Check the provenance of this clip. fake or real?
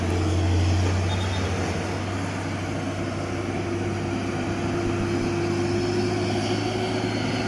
real